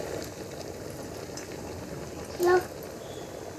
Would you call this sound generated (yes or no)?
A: no